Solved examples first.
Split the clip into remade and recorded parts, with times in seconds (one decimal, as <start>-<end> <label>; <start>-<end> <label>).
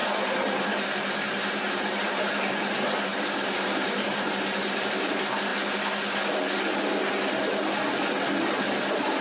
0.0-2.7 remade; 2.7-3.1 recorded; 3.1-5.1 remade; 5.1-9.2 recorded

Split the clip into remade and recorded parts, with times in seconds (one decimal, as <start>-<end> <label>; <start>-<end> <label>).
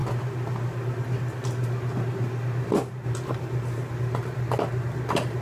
0.0-5.4 recorded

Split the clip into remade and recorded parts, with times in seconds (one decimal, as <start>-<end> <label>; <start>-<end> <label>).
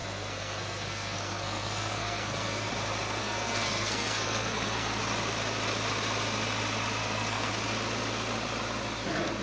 0.0-2.7 remade; 2.7-3.2 recorded; 3.2-5.0 remade; 5.0-7.0 recorded; 7.0-7.5 remade; 7.5-9.4 recorded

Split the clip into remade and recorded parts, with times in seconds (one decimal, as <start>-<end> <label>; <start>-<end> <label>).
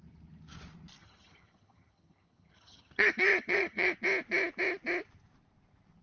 0.0-1.0 recorded; 1.0-3.9 remade; 3.9-6.0 recorded